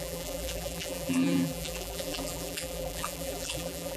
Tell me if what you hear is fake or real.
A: fake